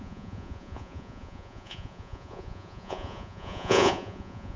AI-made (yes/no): yes